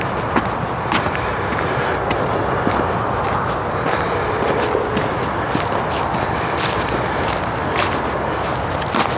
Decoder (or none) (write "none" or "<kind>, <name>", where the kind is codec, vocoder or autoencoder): none